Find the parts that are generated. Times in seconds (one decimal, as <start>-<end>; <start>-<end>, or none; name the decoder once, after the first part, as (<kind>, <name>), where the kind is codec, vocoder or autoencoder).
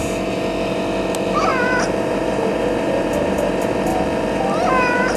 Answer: 1.5-3.5 (vocoder, BigVGAN v2); 3.9-5.2